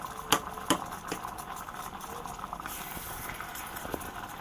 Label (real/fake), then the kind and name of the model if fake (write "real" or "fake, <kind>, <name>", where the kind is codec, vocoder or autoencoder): real